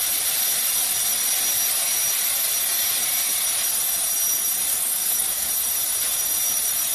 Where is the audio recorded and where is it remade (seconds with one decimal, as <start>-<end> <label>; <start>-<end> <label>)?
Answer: 0.0-4.7 recorded; 4.7-5.5 remade; 5.5-6.9 recorded